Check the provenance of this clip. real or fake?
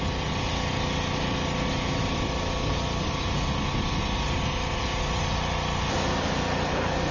real